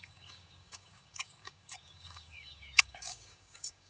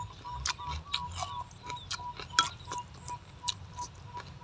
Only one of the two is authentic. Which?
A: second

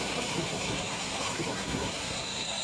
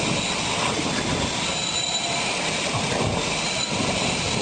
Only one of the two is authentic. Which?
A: second